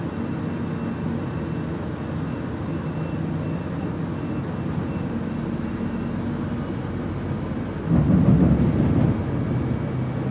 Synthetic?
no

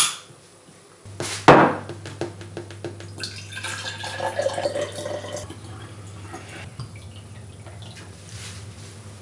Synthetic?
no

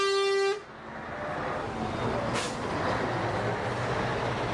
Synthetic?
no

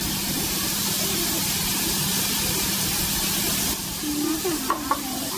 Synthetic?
no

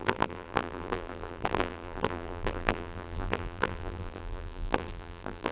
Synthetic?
yes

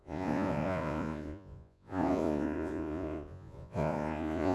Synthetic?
yes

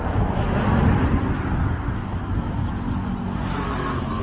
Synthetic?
no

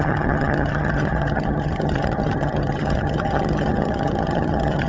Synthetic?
yes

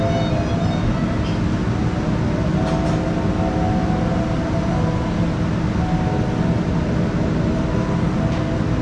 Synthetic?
no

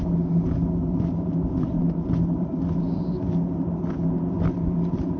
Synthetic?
no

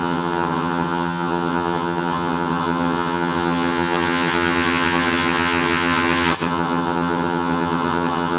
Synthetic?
yes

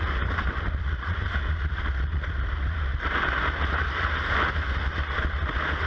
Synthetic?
no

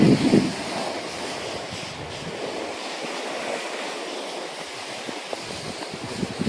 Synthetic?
no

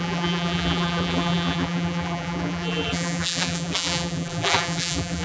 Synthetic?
yes